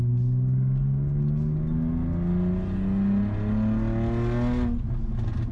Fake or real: real